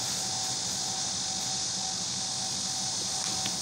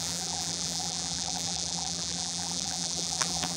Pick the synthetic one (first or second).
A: second